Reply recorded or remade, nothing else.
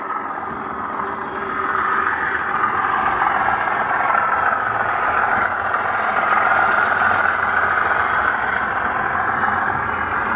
recorded